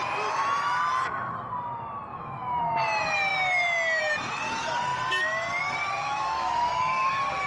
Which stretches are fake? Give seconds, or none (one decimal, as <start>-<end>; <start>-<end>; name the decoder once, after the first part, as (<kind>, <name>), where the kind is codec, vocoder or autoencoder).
2.1-2.6 (autoencoder, DAC-VAE); 6.0-7.1